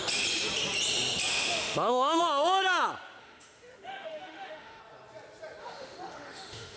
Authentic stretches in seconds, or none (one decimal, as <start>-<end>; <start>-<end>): 0.0-1.3; 2.2-3.2; 4.8-5.6